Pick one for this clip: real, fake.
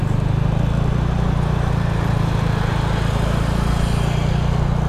real